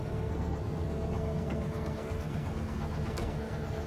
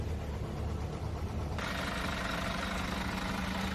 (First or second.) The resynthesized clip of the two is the first